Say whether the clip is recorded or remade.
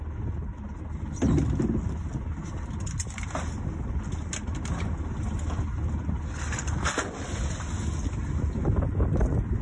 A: recorded